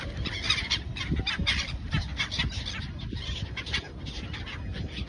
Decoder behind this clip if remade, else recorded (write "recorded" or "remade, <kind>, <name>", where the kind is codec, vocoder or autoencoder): recorded